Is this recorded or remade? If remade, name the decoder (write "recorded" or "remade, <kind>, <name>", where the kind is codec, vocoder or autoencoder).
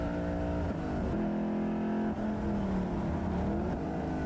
recorded